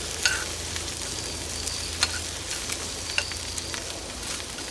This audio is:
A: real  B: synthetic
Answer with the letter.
A